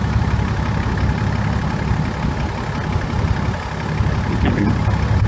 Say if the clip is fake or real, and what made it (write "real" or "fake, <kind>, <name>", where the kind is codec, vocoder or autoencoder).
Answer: real